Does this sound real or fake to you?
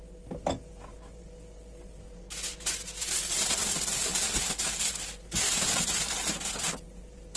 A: real